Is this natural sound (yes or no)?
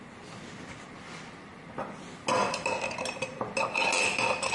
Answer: yes